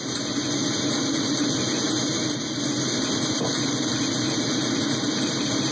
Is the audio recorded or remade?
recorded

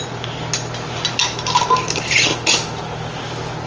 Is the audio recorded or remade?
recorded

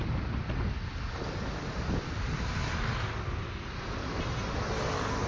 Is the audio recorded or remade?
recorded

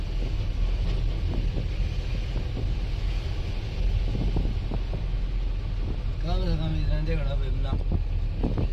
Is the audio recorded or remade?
recorded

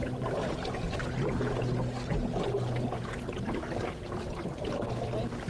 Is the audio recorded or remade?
recorded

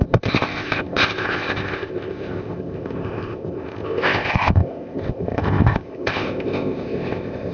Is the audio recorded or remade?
remade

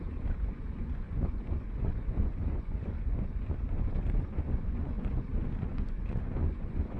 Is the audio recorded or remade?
remade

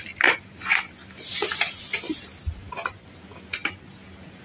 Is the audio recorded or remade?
recorded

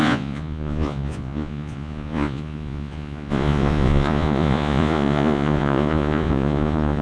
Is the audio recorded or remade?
remade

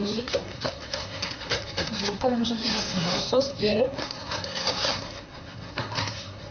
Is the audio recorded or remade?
remade